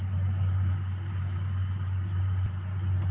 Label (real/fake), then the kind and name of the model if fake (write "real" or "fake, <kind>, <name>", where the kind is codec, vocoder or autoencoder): real